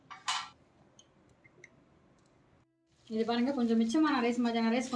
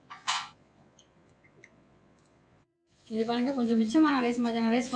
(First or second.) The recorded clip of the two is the first